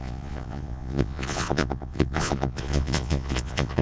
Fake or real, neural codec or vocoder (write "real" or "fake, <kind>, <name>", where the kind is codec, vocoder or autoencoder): fake, vocoder, Vocos